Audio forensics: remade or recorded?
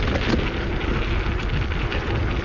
recorded